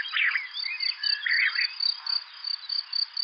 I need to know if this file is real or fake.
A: real